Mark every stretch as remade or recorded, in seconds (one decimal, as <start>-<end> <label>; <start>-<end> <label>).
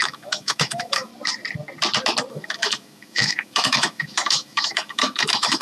0.0-1.1 remade; 1.1-2.3 recorded; 2.3-5.6 remade